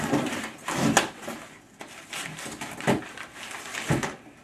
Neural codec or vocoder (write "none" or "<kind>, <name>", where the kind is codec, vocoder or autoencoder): none